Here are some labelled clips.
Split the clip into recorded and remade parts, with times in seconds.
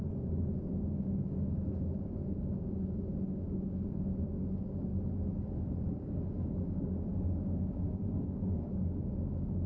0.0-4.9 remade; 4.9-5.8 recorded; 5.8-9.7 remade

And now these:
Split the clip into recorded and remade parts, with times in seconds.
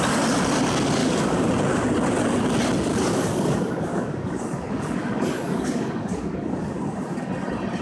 0.0-1.0 recorded; 1.0-1.5 remade; 1.5-2.9 recorded; 2.9-7.3 remade; 7.3-7.8 recorded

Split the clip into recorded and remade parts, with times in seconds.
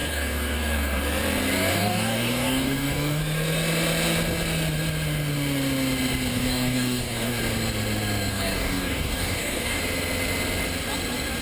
0.0-1.0 remade; 1.0-1.7 recorded; 1.7-3.2 remade; 3.2-6.3 recorded; 6.3-7.4 remade; 7.4-8.3 recorded; 8.3-9.8 remade; 9.8-11.4 recorded